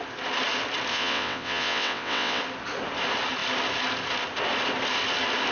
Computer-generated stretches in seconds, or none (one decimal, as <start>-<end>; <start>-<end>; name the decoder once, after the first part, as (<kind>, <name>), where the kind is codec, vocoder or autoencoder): 0.9-2.4 (vocoder, WaveNeXt)